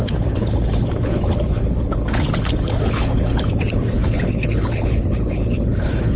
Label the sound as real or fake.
fake